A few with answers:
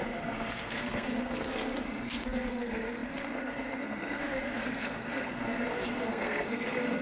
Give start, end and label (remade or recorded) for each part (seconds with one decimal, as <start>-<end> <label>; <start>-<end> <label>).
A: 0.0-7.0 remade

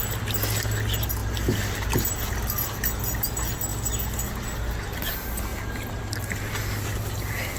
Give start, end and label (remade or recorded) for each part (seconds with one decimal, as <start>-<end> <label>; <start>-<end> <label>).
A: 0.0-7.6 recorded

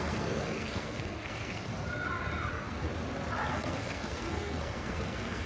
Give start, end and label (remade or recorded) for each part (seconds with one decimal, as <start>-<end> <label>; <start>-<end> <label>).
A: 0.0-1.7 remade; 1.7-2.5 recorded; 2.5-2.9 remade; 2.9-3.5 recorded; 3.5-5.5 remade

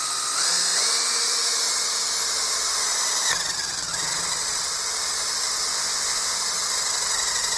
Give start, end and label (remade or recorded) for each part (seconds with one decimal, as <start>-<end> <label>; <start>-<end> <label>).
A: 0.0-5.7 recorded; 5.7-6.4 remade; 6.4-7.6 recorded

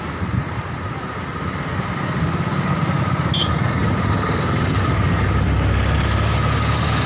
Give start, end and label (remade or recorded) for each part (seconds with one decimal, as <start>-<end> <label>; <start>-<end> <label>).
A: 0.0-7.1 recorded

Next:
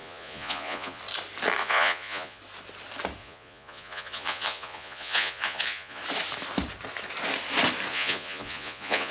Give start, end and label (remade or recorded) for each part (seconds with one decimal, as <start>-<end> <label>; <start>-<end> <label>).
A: 0.0-1.0 remade; 1.0-1.6 recorded; 1.6-2.4 remade; 2.4-3.2 recorded; 3.2-6.0 remade; 6.0-7.9 recorded; 7.9-9.1 remade

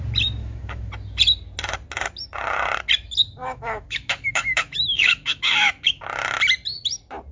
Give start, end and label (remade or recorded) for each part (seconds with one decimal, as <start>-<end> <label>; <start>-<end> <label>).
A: 0.0-0.4 recorded; 0.4-0.9 remade; 0.9-3.4 recorded; 3.4-6.0 remade; 6.0-7.3 recorded